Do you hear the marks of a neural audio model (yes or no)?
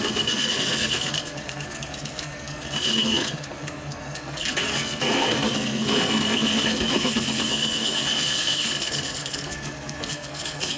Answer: yes